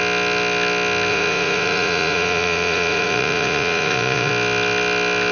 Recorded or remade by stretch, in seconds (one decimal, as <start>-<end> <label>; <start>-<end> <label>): 0.0-1.1 recorded; 1.1-4.3 remade; 4.3-5.3 recorded